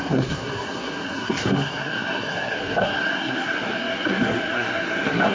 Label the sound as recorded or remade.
remade